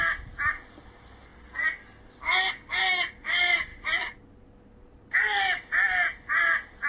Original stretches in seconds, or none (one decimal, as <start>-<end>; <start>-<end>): 0.0-6.9